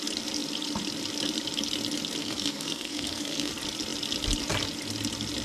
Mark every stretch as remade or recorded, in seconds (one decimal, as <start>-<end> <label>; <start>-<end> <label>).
0.0-2.2 recorded; 2.2-3.5 remade; 3.5-5.4 recorded